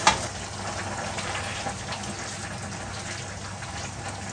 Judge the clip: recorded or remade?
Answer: recorded